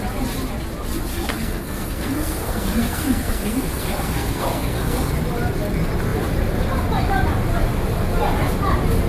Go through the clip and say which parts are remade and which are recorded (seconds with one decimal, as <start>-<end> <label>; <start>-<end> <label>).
0.0-1.1 recorded; 1.1-5.1 remade; 5.1-9.1 recorded